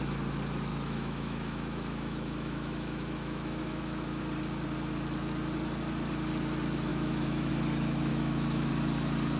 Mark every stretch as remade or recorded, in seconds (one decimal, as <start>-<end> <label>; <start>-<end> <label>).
0.0-0.7 recorded; 0.7-4.2 remade; 4.2-6.9 recorded; 6.9-7.5 remade; 7.5-8.1 recorded; 8.1-8.7 remade; 8.7-9.4 recorded